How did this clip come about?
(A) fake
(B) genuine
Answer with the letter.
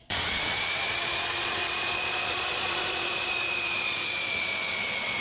A